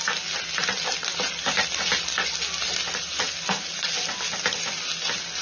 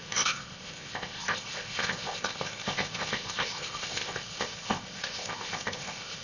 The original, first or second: first